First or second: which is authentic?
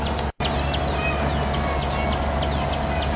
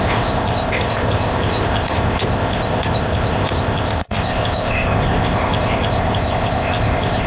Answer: first